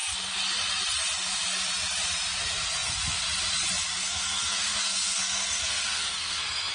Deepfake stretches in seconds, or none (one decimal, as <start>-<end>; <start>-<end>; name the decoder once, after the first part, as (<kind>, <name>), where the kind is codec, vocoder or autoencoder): 4.0-6.7 (codec, SNAC)